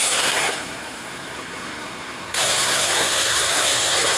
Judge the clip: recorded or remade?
remade